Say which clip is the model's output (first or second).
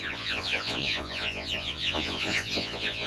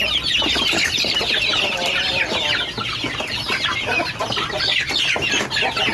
first